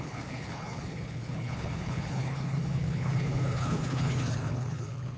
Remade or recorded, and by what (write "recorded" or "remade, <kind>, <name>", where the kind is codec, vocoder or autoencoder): remade, codec, HILCodec